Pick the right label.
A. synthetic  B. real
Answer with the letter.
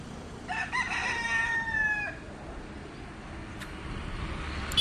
B